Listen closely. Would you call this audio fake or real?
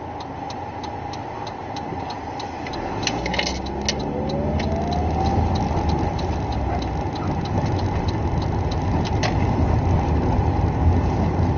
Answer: real